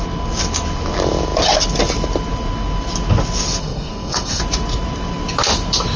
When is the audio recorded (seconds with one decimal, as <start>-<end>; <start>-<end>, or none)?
0.0-3.6; 4.4-6.0